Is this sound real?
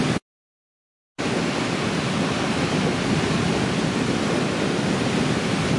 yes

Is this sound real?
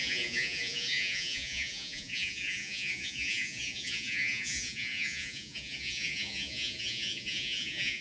no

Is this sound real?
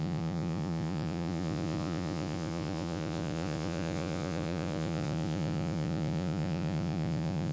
no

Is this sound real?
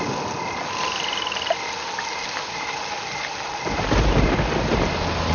yes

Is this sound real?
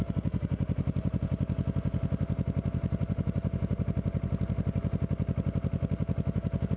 yes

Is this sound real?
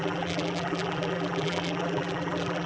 no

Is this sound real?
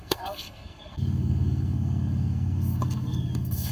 no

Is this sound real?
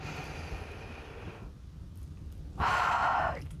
yes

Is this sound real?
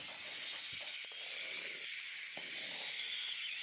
yes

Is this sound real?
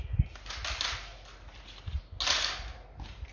yes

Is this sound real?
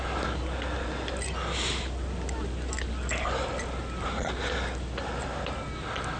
yes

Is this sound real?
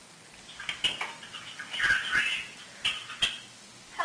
yes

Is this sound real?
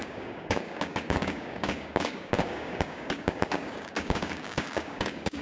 no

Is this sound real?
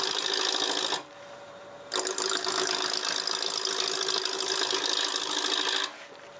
yes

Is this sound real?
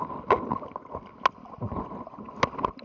yes